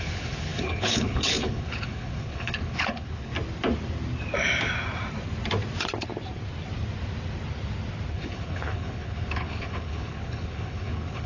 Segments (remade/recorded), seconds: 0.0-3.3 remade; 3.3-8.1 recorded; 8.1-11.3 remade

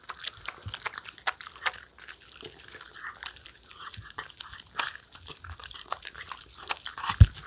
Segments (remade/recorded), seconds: 0.0-5.6 recorded; 5.6-6.2 remade; 6.2-7.5 recorded

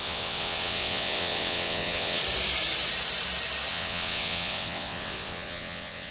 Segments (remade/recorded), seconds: 0.0-2.2 remade; 2.2-3.7 recorded; 3.7-6.1 remade

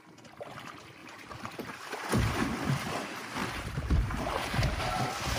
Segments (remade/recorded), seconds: 0.0-1.0 recorded; 1.0-1.7 remade; 1.7-3.4 recorded; 3.4-4.8 remade; 4.8-5.4 recorded

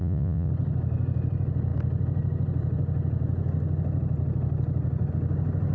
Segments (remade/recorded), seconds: 0.0-0.5 remade; 0.5-5.7 recorded

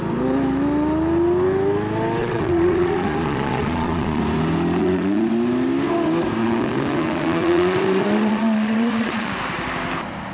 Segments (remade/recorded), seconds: 0.0-2.2 recorded; 2.2-4.2 remade; 4.2-4.8 recorded; 4.8-5.3 remade; 5.3-6.4 recorded; 6.4-9.3 remade; 9.3-10.3 recorded

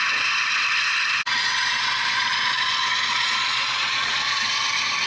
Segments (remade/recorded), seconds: 0.0-1.4 recorded; 1.4-4.5 remade; 4.5-5.1 recorded

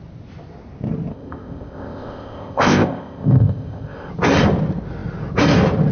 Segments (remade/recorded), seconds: 0.0-1.1 recorded; 1.1-4.1 remade; 4.1-5.9 recorded